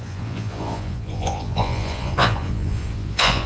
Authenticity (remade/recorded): remade